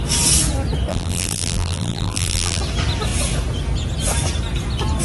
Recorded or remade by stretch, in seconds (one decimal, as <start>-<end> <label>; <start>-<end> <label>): 0.0-0.9 recorded; 0.9-2.6 remade; 2.6-5.0 recorded